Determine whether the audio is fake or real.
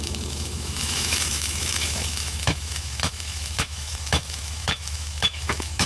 fake